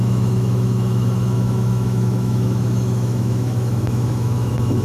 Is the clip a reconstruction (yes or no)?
yes